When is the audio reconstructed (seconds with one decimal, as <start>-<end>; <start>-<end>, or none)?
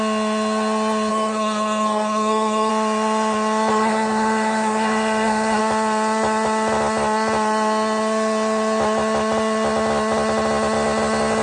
1.1-2.7; 3.7-5.6